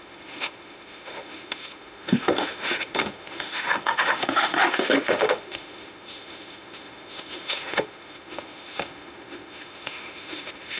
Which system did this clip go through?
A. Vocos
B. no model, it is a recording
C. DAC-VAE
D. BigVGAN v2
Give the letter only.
C